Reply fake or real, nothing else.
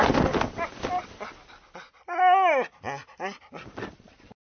real